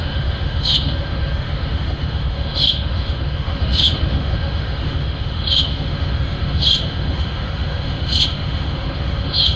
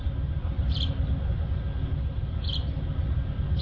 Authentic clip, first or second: second